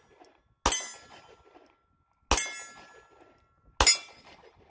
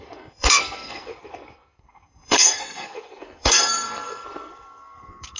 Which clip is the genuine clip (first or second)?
first